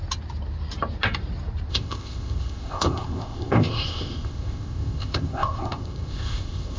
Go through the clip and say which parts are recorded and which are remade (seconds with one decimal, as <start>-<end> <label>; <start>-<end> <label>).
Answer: 0.0-1.7 recorded; 1.7-6.8 remade